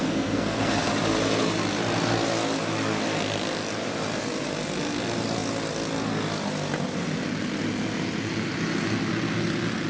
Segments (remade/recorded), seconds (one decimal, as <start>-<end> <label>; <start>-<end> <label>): 0.0-0.9 remade; 0.9-9.9 recorded